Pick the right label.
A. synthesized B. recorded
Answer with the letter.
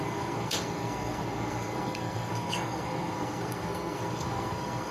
A